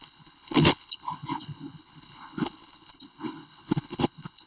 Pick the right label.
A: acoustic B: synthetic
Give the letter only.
B